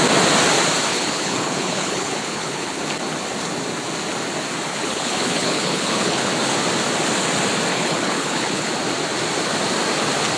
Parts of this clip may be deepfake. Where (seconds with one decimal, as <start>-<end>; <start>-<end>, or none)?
0.9-2.8; 4.7-6.3; 7.7-8.7